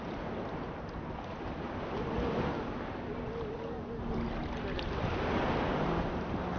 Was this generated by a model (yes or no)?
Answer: no